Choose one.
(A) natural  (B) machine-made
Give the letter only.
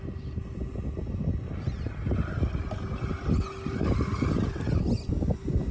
A